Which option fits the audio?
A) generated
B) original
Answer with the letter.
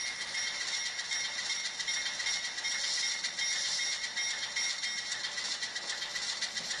B